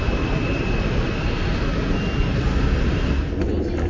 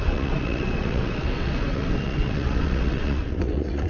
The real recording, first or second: first